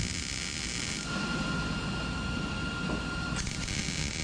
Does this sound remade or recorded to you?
recorded